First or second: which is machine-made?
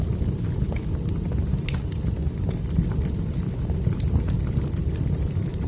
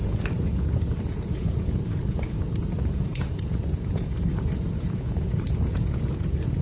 second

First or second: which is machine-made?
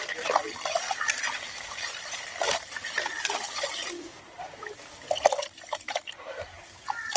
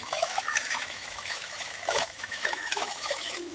second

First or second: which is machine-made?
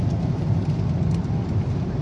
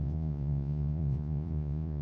second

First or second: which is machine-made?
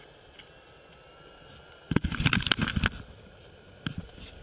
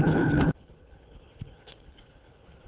second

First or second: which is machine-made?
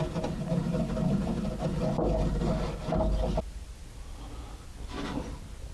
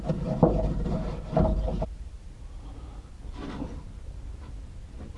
second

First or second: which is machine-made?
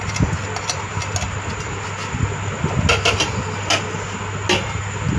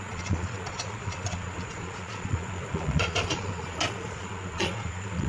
second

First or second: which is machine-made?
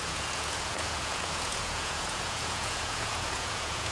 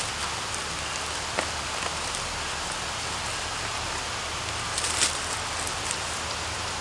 first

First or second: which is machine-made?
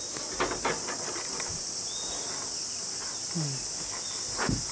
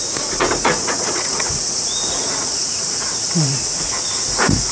second